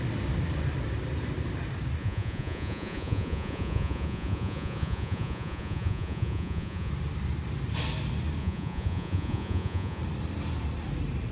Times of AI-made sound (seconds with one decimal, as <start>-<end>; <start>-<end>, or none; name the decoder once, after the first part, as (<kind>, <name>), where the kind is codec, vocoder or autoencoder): 2.0-6.9 (vocoder, Vocos); 8.4-10.0

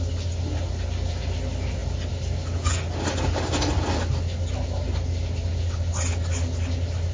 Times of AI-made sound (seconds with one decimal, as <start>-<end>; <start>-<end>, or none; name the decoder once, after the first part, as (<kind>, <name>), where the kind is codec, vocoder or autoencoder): none

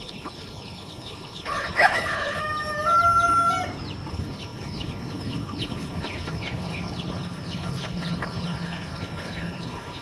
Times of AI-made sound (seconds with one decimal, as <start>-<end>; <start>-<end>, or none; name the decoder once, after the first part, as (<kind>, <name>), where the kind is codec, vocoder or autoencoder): 0.0-2.4 (codec, HILCodec); 4.1-10.0

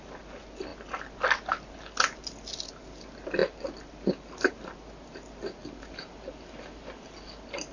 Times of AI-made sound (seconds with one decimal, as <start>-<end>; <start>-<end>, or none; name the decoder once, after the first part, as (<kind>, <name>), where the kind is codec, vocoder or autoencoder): none

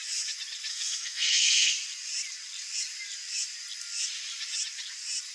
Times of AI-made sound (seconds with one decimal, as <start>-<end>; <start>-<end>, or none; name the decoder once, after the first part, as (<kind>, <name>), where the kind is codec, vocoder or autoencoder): 0.7-1.7 (codec, SNAC)